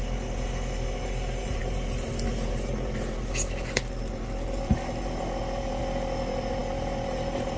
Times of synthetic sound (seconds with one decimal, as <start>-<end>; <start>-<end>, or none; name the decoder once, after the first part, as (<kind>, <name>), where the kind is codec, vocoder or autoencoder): 0.0-7.6 (vocoder, BigVGAN v2)